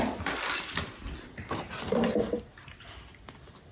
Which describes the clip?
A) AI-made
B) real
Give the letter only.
B